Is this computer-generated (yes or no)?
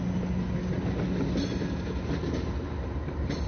no